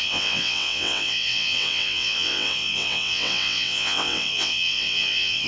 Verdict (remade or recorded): remade